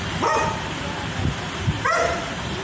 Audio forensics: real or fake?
real